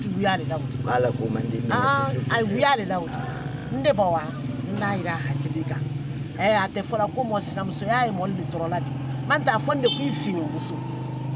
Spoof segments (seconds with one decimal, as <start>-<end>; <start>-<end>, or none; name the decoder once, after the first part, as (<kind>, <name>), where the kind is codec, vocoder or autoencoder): none